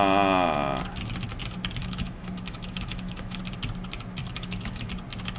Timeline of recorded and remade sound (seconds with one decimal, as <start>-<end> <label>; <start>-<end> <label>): 0.0-1.8 recorded; 1.8-3.4 remade; 3.4-4.2 recorded; 4.2-4.9 remade; 4.9-5.4 recorded